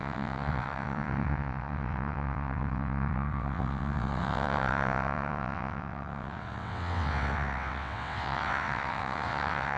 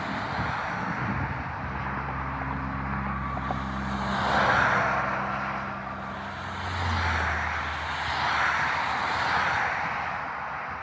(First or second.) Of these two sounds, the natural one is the second